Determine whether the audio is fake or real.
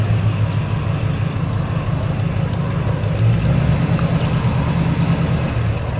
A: real